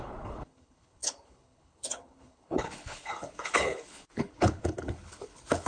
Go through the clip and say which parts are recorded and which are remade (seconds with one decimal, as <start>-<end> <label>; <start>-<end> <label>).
0.0-5.7 remade